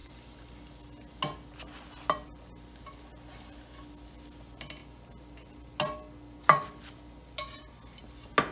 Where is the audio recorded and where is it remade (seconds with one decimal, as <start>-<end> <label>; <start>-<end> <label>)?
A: 0.0-8.5 recorded